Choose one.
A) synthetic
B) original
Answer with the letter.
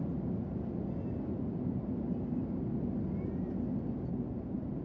B